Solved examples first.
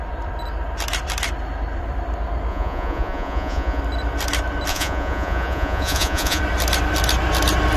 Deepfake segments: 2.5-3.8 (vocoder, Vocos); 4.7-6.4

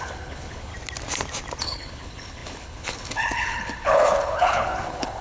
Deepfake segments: 0.0-0.7 (codec, HILCodec); 1.6-5.2

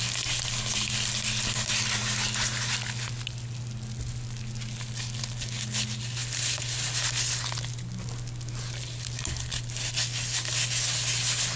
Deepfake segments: none